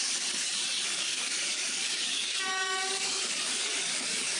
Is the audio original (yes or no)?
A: no